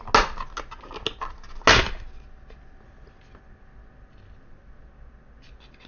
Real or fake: real